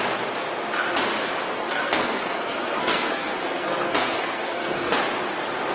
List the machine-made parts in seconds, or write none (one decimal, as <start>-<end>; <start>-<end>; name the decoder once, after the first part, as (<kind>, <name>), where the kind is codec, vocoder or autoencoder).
1.6-5.0 (codec, SNAC)